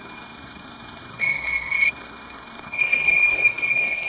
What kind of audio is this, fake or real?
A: fake